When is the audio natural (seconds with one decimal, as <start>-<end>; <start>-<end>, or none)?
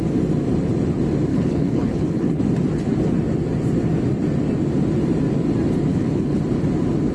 0.0-1.3; 2.4-5.9; 6.4-7.1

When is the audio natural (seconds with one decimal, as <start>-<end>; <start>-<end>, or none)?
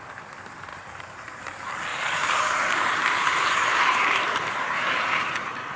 0.0-0.7; 1.4-1.9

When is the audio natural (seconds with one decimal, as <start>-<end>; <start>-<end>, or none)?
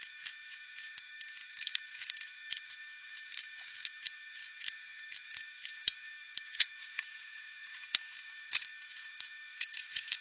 none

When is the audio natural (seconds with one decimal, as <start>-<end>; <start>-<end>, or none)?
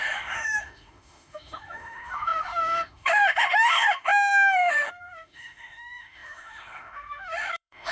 none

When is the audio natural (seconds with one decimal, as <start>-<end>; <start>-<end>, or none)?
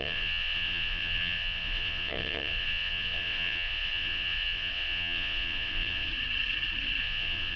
6.1-7.0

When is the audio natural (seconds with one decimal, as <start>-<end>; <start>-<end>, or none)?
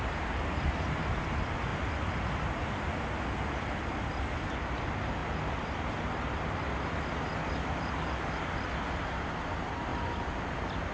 1.0-10.9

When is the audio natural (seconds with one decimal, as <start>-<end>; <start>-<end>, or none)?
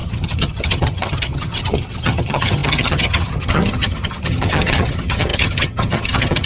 none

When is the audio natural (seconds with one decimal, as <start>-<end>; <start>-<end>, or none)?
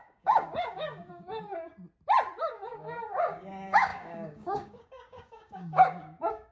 1.7-2.5